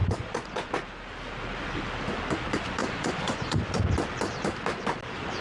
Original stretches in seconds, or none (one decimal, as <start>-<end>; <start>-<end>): 0.7-2.8; 3.6-5.4